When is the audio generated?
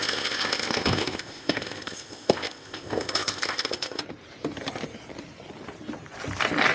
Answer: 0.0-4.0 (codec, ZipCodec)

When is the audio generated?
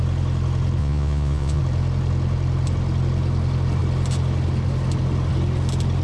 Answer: 0.8-1.6 (vocoder, Vocos)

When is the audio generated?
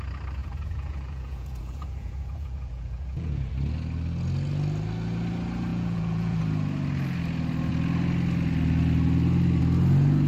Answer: 0.4-3.5 (vocoder, Vocos); 5.7-6.4